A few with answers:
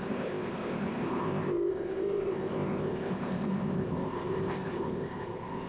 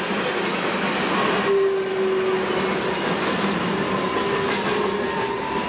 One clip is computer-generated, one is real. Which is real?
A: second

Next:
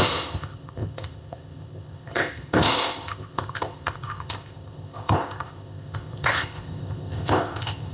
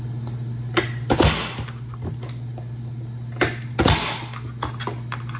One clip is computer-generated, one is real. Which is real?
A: second